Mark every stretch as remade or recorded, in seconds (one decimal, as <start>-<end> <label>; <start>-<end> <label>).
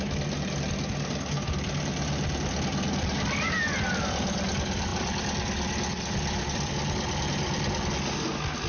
0.0-8.7 recorded